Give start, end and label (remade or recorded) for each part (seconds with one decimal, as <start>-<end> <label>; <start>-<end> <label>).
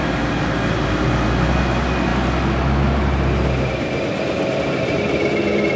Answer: 0.0-5.8 recorded